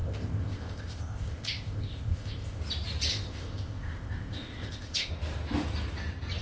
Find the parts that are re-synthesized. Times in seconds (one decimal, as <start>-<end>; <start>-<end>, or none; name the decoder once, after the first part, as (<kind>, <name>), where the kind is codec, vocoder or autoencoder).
0.0-2.6 (codec, ZipCodec); 3.1-5.1